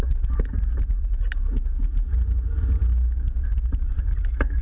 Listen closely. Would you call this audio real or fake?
real